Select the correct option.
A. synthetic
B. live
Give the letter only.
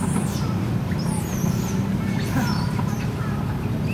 A